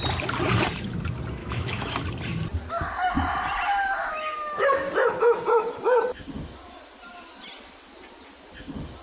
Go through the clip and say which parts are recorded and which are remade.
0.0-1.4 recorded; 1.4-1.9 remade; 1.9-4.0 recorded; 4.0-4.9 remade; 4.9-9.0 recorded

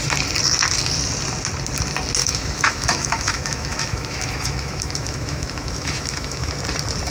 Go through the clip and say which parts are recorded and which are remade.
0.0-2.2 recorded; 2.2-6.5 remade; 6.5-7.1 recorded

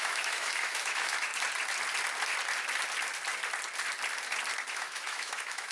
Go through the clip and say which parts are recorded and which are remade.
0.0-1.3 remade; 1.3-4.7 recorded; 4.7-5.7 remade

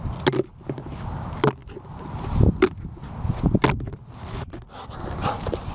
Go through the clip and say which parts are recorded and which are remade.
0.0-5.7 recorded

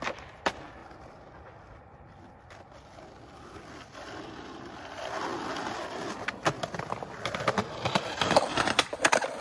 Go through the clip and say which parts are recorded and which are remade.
0.0-9.4 recorded

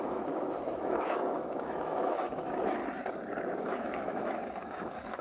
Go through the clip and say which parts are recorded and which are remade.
0.0-2.8 remade; 2.8-3.6 recorded; 3.6-5.2 remade

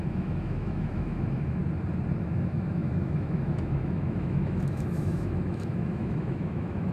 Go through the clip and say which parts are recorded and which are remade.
0.0-1.6 remade; 1.6-2.2 recorded; 2.2-6.9 remade